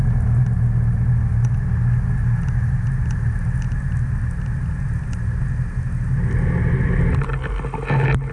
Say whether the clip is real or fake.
real